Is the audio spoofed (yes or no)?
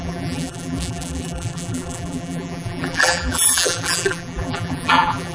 yes